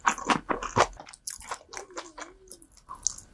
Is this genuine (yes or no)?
yes